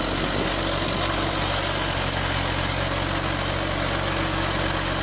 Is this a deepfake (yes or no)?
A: no